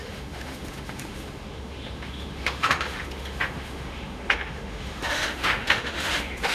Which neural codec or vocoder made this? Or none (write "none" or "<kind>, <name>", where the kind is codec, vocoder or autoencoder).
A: autoencoder, DAC-VAE